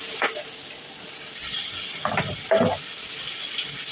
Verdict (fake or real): real